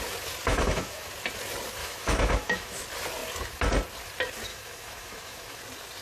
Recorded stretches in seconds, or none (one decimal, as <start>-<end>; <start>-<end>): 0.0-0.5; 1.1-1.8; 2.8-4.5; 5.6-6.0